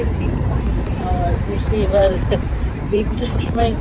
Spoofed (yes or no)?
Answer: yes